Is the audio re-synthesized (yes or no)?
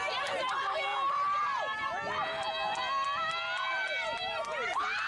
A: no